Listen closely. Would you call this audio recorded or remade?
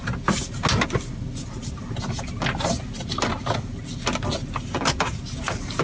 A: recorded